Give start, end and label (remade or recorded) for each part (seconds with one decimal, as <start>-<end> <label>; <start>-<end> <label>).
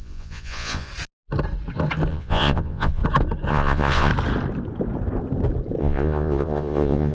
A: 0.0-0.9 remade; 0.9-2.1 recorded; 2.1-3.0 remade; 3.0-3.5 recorded; 3.5-4.1 remade; 4.1-5.8 recorded; 5.8-7.1 remade